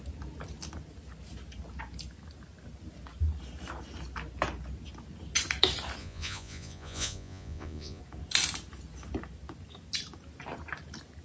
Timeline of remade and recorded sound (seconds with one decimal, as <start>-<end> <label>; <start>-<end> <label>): 0.0-6.0 recorded; 6.0-8.0 remade; 8.0-11.2 recorded